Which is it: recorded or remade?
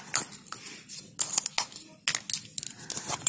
recorded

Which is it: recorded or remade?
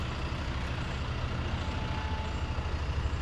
recorded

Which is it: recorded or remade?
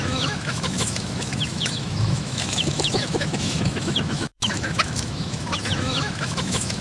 remade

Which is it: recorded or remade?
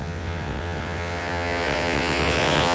remade